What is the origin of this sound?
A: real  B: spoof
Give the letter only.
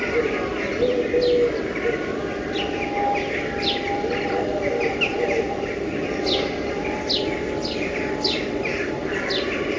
A